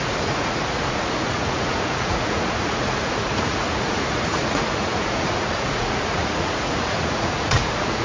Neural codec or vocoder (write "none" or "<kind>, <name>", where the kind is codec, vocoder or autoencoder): vocoder, Vocos